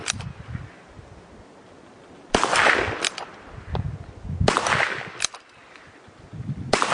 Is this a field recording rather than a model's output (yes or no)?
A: yes